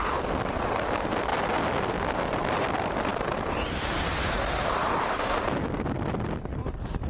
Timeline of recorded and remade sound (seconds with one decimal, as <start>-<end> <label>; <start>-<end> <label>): 0.0-7.1 recorded